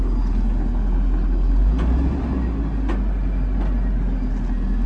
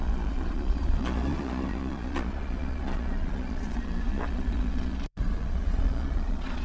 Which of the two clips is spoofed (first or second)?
second